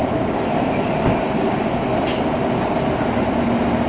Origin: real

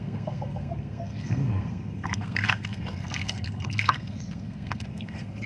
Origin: fake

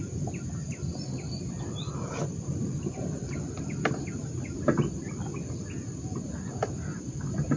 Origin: fake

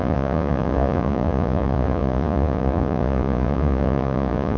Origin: fake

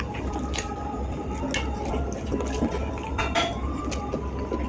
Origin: real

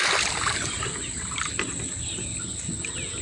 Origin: real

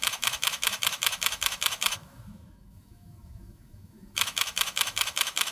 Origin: fake